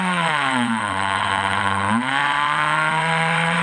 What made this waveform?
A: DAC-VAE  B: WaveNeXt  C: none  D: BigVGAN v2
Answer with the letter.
B